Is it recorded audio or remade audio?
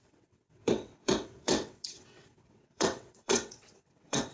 remade